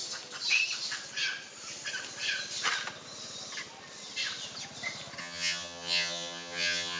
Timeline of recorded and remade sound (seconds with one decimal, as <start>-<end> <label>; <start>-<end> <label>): 0.0-5.2 recorded; 5.2-7.0 remade